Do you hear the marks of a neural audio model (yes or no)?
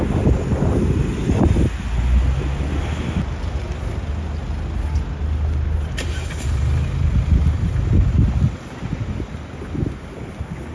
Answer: no